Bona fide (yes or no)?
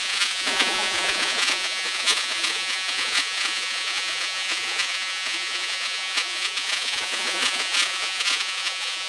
no